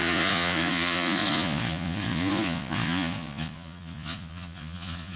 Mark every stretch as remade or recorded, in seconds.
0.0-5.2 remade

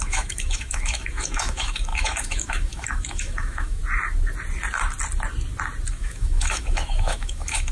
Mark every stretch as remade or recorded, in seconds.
0.0-3.8 remade; 3.8-5.9 recorded; 5.9-7.7 remade

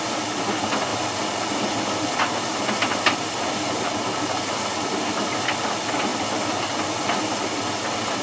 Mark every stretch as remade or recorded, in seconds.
0.0-6.1 recorded; 6.1-6.6 remade; 6.6-8.2 recorded

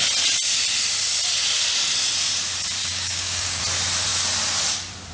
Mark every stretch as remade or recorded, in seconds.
0.0-2.8 recorded; 2.8-3.6 remade; 3.6-5.1 recorded

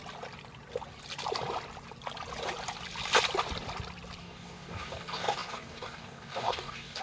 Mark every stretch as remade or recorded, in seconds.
0.0-4.2 recorded; 4.2-7.0 remade

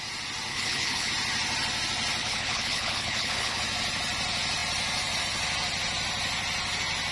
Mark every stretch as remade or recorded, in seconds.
0.0-0.5 recorded; 0.5-1.1 remade; 1.1-2.2 recorded; 2.2-3.6 remade; 3.6-7.1 recorded